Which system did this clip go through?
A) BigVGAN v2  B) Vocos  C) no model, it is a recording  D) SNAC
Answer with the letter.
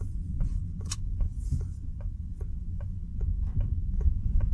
B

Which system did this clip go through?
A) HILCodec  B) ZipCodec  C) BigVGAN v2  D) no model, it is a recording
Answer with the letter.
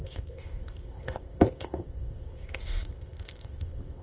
B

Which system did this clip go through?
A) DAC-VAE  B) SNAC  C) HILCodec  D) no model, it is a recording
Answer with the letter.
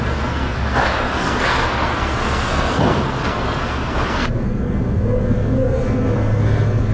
B